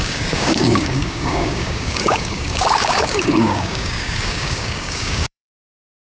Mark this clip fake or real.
fake